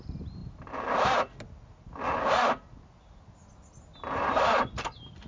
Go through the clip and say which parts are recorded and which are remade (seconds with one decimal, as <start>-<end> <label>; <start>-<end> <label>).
0.0-5.3 recorded